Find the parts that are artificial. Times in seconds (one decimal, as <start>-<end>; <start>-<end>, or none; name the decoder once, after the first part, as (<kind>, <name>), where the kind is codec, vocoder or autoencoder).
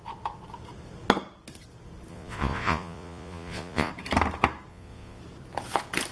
2.1-3.9 (vocoder, Vocos); 4.7-5.2